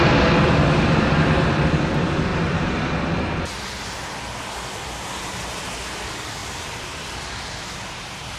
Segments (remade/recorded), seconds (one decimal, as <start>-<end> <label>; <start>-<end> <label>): 0.0-6.4 recorded; 6.4-7.6 remade; 7.6-8.4 recorded